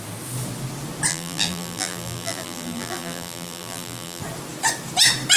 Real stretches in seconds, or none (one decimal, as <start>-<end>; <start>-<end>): 0.0-1.1; 4.2-5.4

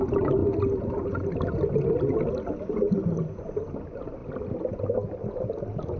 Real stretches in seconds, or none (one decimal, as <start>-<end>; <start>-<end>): 0.0-4.2; 4.8-6.0

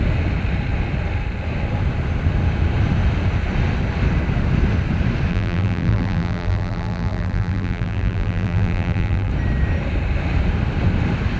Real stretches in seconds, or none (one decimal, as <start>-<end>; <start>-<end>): 0.0-5.3; 9.3-11.4

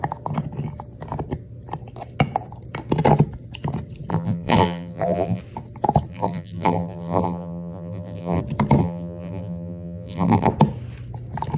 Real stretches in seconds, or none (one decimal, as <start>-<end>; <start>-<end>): 0.0-4.1; 5.4-6.1; 8.4-8.8; 10.5-11.6

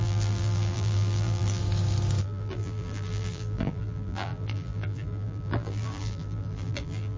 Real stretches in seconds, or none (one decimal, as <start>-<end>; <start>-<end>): 1.6-2.2

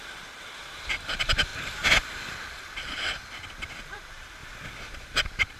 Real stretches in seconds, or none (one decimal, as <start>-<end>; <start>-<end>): 1.5-3.8; 4.4-4.9

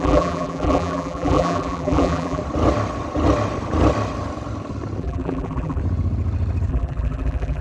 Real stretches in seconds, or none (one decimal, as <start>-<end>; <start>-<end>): 2.4-5.0; 5.8-6.7

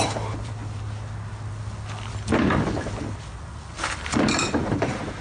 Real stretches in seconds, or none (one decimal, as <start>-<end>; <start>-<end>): 0.6-3.7